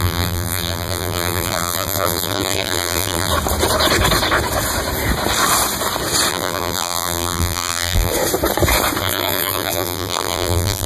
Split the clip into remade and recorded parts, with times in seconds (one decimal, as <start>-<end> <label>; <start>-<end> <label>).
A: 0.0-3.3 remade; 3.3-6.3 recorded; 6.3-8.1 remade; 8.1-9.0 recorded; 9.0-10.9 remade